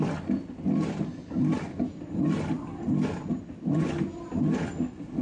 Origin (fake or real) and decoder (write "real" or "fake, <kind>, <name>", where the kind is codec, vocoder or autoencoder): real